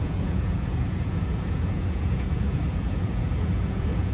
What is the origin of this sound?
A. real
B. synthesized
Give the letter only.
B